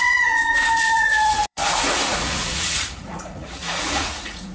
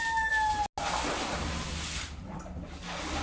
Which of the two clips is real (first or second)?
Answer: second